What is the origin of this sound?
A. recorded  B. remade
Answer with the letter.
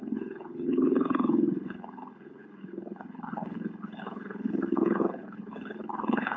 B